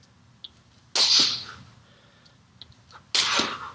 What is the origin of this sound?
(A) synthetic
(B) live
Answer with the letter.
B